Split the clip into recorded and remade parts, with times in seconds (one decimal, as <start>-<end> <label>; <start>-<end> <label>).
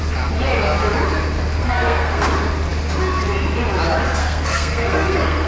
0.0-1.6 recorded; 1.6-2.3 remade; 2.3-4.2 recorded; 4.2-5.5 remade